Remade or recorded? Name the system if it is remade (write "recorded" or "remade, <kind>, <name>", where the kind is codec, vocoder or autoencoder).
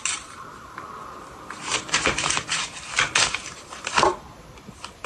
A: remade, vocoder, BigVGAN v2